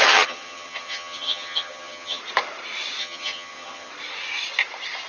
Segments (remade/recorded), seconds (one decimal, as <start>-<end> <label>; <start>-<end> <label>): 0.0-2.2 remade; 2.2-3.0 recorded; 3.0-3.9 remade; 3.9-5.1 recorded